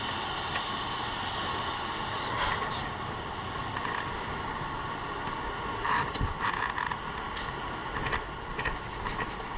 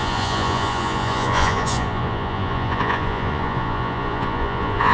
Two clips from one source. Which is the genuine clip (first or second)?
first